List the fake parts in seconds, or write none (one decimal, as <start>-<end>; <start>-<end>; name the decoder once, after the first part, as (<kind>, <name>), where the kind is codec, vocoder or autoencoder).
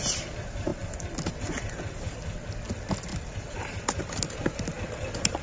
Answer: 0.7-1.3 (vocoder, BigVGAN v2); 3.1-3.7